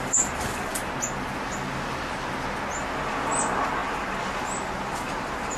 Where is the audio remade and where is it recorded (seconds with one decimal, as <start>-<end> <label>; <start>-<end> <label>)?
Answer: 0.0-0.7 remade; 0.7-2.9 recorded; 2.9-5.6 remade